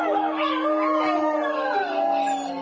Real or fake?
real